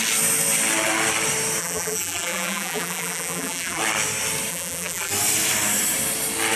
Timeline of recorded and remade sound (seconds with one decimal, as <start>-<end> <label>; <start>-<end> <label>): 0.0-1.6 recorded; 1.6-3.8 remade; 3.8-4.5 recorded; 4.5-5.1 remade; 5.1-6.6 recorded